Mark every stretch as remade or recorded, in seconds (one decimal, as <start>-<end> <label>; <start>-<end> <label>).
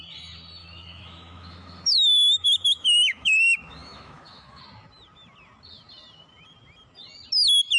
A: 0.0-0.6 recorded; 0.6-4.6 remade; 4.6-7.8 recorded